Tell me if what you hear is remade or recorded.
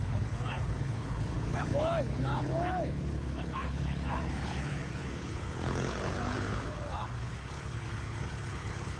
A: remade